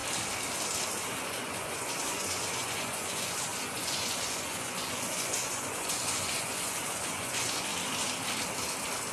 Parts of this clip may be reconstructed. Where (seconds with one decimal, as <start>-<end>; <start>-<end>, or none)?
1.2-7.7